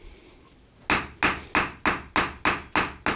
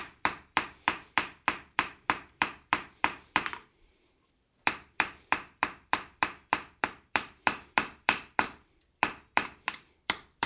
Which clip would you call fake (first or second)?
second